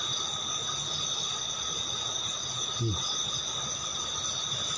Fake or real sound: real